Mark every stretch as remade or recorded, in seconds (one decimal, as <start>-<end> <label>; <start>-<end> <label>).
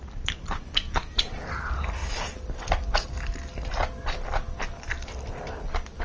0.0-6.0 recorded